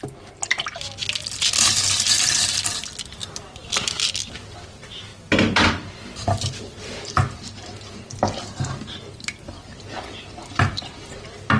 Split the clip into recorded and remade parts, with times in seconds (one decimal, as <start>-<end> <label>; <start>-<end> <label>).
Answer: 0.0-5.1 recorded; 5.1-8.9 remade; 8.9-11.6 recorded